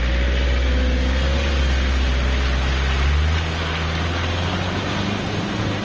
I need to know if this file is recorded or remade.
recorded